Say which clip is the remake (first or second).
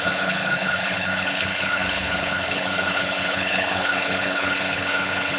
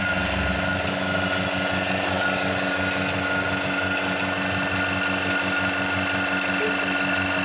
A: first